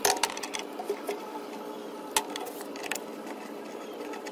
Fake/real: real